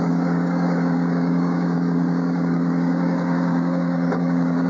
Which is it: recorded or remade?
remade